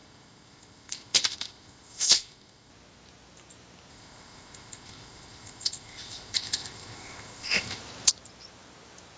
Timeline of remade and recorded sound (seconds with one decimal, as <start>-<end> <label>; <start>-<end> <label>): 0.0-2.7 remade; 2.7-3.9 recorded; 3.9-7.8 remade; 7.8-9.2 recorded